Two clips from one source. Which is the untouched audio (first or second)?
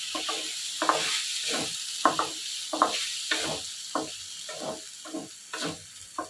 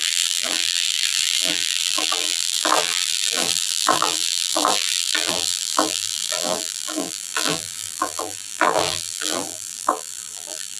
first